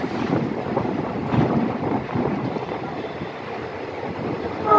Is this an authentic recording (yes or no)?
yes